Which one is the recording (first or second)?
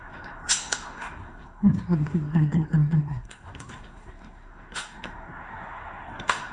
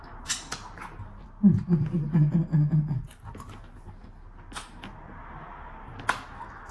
second